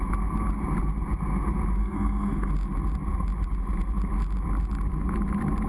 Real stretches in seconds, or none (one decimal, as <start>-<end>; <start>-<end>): 0.0-1.8; 2.5-5.7